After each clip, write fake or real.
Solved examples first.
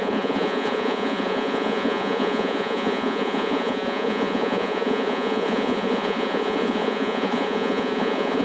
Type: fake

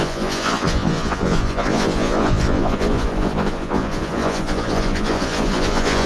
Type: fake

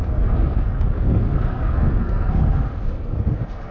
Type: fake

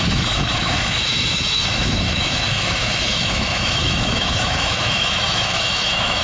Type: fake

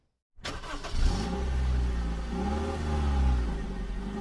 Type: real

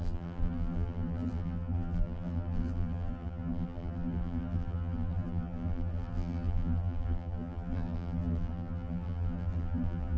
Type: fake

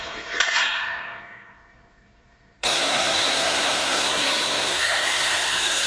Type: fake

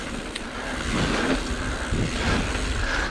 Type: real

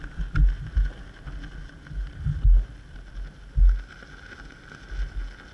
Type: real